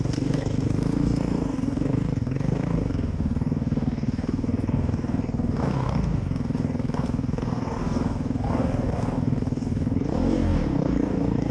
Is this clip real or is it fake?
fake